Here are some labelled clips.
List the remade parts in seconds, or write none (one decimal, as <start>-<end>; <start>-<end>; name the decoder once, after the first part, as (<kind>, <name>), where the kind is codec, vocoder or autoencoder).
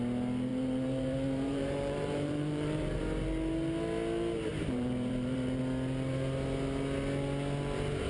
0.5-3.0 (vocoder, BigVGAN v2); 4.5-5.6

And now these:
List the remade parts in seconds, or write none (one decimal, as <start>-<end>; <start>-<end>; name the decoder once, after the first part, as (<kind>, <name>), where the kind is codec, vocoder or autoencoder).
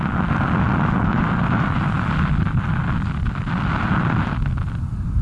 1.1-2.6 (vocoder, BigVGAN v2)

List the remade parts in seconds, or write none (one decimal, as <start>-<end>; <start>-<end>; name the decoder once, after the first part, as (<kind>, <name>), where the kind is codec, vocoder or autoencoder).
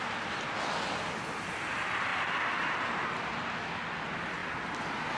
0.0-5.2 (vocoder, BigVGAN v2)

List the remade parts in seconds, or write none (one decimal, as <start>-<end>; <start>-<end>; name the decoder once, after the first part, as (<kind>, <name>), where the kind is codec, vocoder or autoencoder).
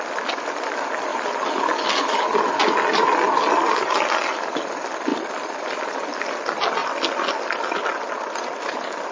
1.1-1.6 (vocoder, BigVGAN v2); 5.1-6.3; 6.8-9.1